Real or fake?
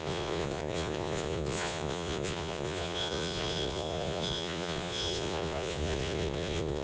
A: fake